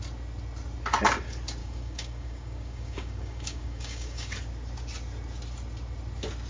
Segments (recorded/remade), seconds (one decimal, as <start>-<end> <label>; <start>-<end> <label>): 0.0-1.6 recorded; 1.6-4.3 remade; 4.3-6.5 recorded